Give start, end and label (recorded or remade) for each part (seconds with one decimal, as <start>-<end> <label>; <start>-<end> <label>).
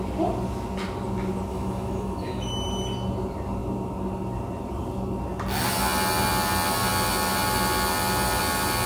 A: 0.0-1.5 recorded; 1.5-2.5 remade; 2.5-8.9 recorded